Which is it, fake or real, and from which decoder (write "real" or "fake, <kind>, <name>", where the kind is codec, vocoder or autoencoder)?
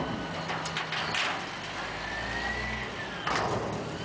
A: real